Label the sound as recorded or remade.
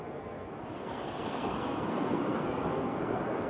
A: remade